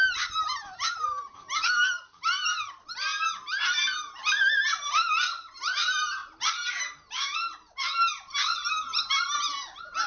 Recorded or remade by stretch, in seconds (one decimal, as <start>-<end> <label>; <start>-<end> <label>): 0.0-3.1 remade; 3.1-4.9 recorded; 4.9-10.1 remade